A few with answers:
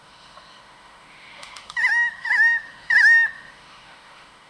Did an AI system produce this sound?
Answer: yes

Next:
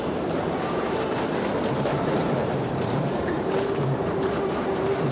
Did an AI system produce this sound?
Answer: yes